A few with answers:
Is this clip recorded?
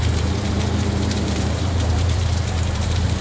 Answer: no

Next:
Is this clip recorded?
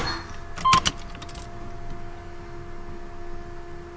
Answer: yes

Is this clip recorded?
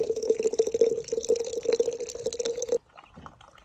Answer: no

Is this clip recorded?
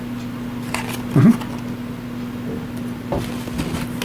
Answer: yes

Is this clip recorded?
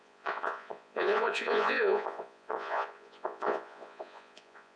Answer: no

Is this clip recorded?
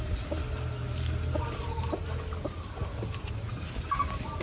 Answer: yes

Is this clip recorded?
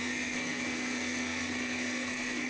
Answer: no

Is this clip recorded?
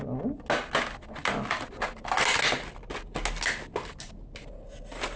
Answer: yes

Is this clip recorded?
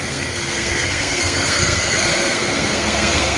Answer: no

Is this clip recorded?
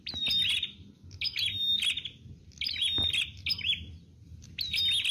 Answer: yes